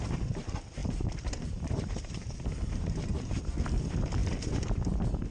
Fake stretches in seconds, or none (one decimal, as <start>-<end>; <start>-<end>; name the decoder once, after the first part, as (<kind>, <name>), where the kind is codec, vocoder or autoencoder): 0.8-3.4 (vocoder, BigVGAN v2); 4.2-4.8